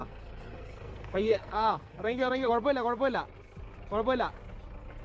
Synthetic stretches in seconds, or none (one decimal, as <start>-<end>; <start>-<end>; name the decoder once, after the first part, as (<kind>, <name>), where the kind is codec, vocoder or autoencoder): 0.0-2.5 (codec, SNAC)